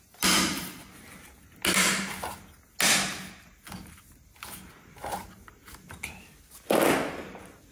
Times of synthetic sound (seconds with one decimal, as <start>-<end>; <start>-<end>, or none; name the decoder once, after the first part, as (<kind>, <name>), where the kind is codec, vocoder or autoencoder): none